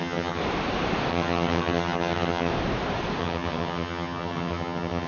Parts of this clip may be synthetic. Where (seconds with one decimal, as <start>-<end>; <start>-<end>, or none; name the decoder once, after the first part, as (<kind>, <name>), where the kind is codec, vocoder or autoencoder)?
0.0-0.4 (vocoder, HiFi-GAN); 1.1-2.5; 3.2-5.1

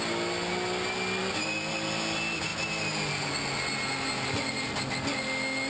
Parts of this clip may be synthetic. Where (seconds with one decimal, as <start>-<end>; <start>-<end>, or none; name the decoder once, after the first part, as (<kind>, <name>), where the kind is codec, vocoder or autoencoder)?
none

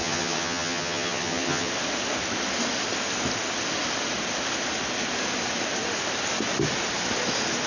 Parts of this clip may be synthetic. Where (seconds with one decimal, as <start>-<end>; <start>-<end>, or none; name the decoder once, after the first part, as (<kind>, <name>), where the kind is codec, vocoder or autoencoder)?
0.0-1.7 (vocoder, HiFi-GAN)

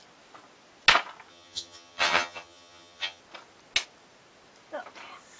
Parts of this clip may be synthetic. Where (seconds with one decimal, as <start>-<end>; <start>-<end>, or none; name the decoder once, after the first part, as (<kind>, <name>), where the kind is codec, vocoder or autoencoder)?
1.3-3.2 (vocoder, HiFi-GAN)

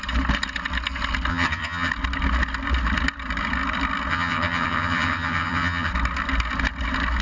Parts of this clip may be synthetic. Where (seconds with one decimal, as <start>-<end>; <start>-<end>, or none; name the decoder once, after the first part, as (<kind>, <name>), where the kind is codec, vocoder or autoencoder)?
1.3-1.9 (vocoder, HiFi-GAN); 4.1-5.9

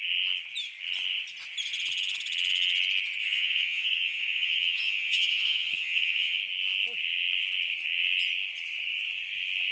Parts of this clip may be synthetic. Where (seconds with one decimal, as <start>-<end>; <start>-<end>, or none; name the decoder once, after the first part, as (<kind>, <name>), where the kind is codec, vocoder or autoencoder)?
3.2-6.4 (vocoder, HiFi-GAN)